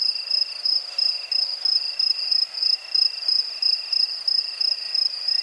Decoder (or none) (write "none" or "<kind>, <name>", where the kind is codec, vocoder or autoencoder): none